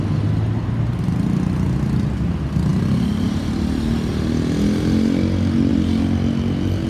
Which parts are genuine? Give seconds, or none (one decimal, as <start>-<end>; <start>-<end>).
0.0-6.9